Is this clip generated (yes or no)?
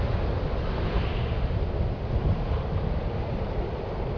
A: no